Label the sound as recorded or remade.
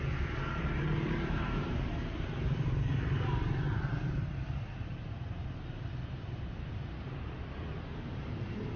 remade